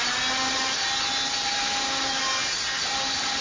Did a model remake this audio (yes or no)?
no